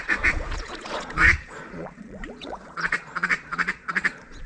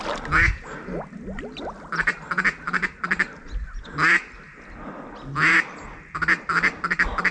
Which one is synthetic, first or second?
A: first